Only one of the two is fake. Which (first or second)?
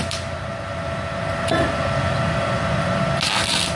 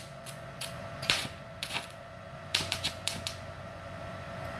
second